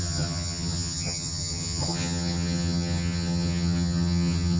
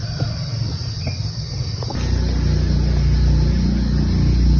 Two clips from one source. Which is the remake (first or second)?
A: first